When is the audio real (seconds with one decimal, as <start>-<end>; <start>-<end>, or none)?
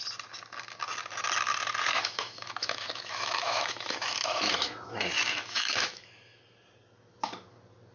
0.0-1.9; 6.4-7.9